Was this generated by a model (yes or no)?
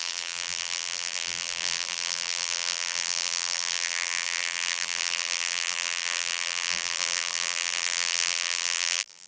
yes